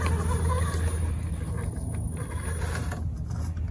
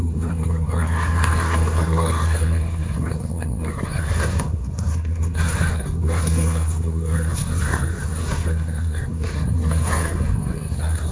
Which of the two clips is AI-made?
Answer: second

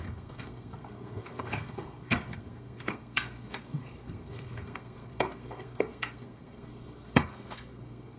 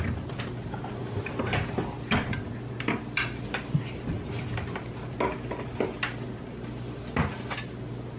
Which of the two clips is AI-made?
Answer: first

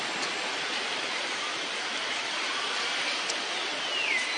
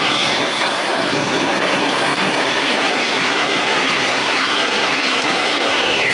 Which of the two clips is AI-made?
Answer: second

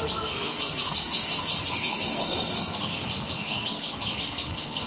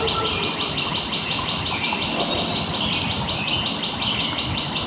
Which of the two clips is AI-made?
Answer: first